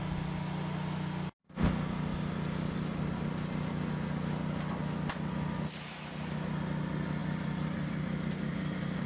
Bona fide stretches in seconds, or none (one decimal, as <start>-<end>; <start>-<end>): 0.0-7.2